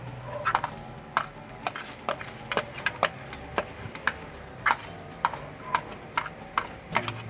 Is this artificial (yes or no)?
no